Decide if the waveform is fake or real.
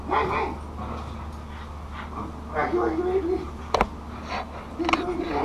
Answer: real